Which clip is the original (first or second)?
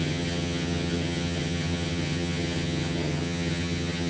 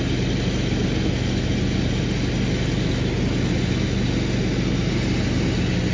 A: second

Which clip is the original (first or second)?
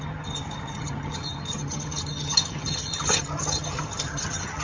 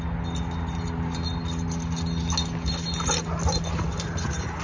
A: second